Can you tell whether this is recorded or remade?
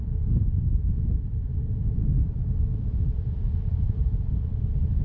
recorded